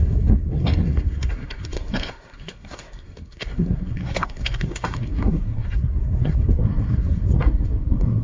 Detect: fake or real fake